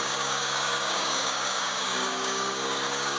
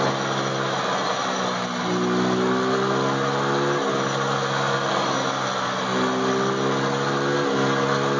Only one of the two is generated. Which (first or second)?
first